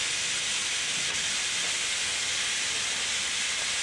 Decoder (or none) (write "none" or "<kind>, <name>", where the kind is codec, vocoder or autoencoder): none